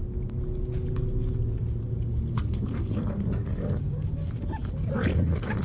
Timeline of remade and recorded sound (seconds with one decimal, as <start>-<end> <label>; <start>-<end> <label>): 0.0-5.6 recorded